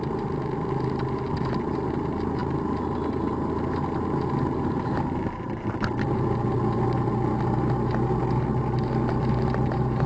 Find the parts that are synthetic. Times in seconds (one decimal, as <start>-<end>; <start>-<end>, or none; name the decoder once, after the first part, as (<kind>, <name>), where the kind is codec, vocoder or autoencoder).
none